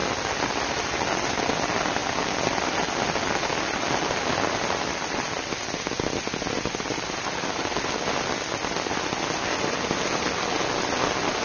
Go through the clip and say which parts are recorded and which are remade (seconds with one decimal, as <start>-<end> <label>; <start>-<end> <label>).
0.0-11.4 recorded